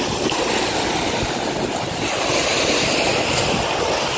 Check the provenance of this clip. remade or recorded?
recorded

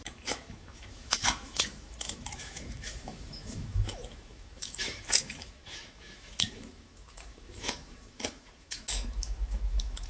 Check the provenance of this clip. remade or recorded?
remade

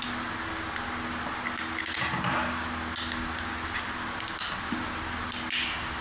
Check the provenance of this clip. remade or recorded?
recorded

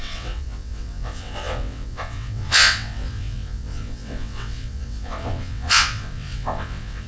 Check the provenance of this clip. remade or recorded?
remade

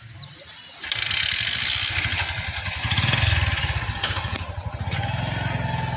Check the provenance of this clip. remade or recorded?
recorded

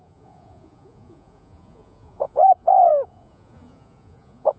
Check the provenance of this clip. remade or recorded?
remade